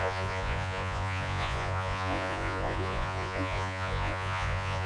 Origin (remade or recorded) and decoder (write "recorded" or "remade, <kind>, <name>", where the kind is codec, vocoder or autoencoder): remade, vocoder, Vocos